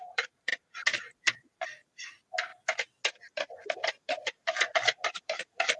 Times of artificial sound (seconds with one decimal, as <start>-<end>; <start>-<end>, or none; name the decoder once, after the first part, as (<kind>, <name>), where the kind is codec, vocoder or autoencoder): 0.0-0.5 (vocoder, BigVGAN v2); 1.3-2.5; 5.2-5.8